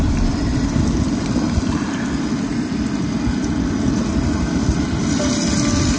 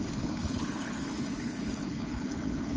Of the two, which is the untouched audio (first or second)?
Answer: first